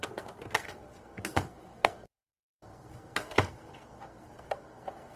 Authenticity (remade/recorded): remade